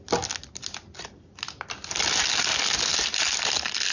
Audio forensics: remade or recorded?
recorded